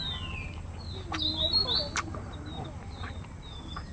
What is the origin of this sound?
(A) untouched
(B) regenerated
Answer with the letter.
A